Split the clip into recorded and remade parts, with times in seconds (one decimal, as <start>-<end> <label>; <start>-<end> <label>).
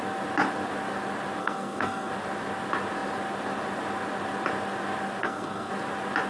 0.0-1.4 recorded; 1.4-2.1 remade; 2.1-5.2 recorded; 5.2-5.7 remade; 5.7-6.3 recorded